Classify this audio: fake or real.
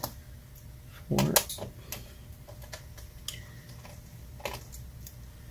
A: real